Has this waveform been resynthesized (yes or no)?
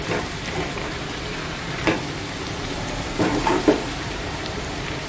yes